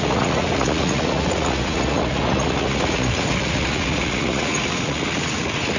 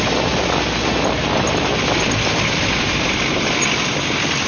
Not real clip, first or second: first